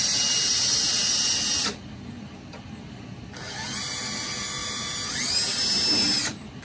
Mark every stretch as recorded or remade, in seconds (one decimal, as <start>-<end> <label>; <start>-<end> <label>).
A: 0.0-6.6 recorded

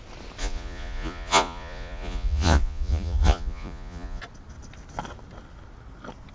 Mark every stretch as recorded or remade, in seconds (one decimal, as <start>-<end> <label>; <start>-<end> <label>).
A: 0.0-0.4 recorded; 0.4-4.2 remade; 4.2-6.3 recorded

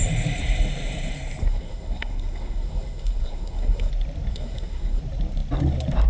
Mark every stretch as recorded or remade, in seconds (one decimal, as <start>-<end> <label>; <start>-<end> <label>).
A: 0.0-1.4 recorded; 1.4-3.9 remade; 3.9-4.3 recorded; 4.3-5.0 remade; 5.0-6.1 recorded

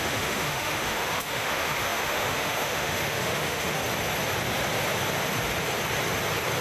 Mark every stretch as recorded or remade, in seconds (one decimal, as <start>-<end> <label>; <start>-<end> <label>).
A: 0.0-3.8 remade; 3.8-6.6 recorded

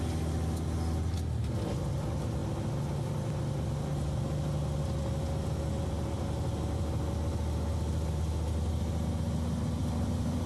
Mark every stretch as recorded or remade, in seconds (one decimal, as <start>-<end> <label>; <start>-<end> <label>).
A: 0.0-9.8 recorded; 9.8-10.5 remade